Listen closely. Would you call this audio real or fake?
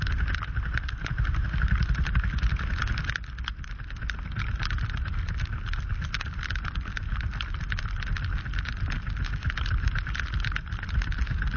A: real